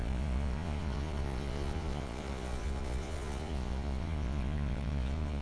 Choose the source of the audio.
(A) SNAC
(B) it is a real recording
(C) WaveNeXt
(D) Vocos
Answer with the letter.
D